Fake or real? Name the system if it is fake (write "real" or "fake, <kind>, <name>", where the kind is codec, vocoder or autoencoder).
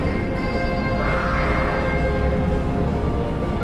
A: real